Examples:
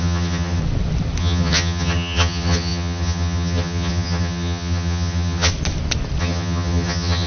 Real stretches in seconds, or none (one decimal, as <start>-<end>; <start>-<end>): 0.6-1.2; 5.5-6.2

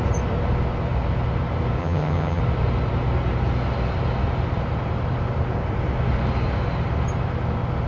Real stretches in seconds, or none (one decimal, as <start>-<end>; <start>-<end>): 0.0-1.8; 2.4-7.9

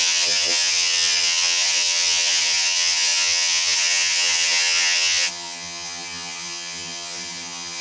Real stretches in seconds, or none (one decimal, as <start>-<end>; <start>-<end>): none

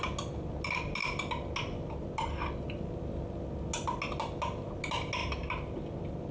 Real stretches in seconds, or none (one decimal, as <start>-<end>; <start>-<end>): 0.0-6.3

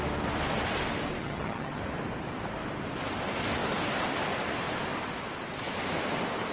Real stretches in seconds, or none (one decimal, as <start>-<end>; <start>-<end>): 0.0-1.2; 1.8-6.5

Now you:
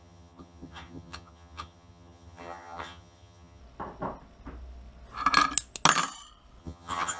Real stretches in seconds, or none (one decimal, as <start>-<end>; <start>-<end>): 3.6-6.6

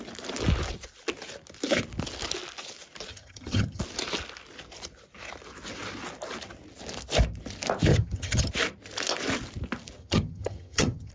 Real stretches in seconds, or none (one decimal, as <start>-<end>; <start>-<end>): 0.0-3.1; 3.8-7.9; 8.5-10.0

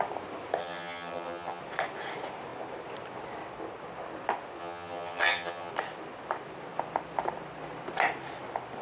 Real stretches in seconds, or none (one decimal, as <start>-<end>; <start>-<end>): 0.0-0.6; 1.6-4.6; 5.7-8.8